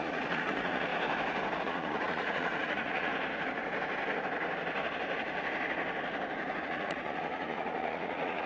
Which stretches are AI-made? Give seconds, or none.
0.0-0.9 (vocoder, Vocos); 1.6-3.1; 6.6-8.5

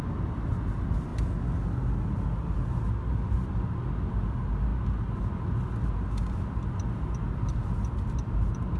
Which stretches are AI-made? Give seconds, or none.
none

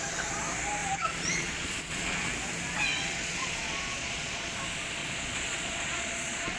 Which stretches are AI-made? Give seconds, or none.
0.8-2.3 (vocoder, Vocos); 2.9-4.6; 5.0-6.6

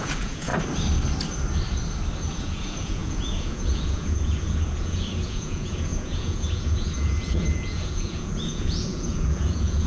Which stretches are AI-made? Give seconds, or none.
0.0-0.5 (vocoder, Vocos); 2.3-9.9

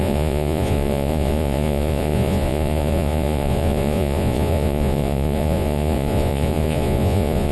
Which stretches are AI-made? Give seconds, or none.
0.0-7.5 (vocoder, Vocos)

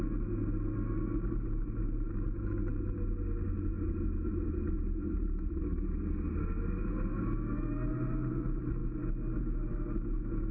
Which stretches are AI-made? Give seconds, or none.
none

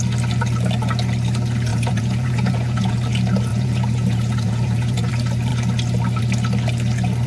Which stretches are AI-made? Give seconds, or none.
1.7-2.9 (vocoder, Vocos); 3.5-5.1

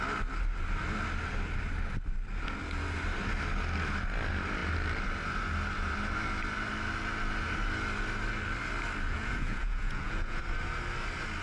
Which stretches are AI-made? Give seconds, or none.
9.1-10.4 (vocoder, Vocos)